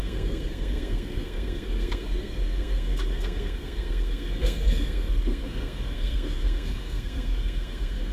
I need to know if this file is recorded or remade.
remade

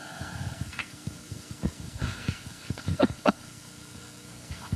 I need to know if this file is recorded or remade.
remade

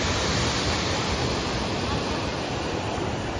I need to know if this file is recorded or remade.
recorded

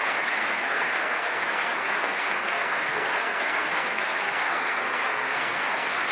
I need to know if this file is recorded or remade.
remade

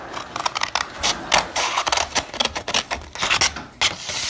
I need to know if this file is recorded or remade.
recorded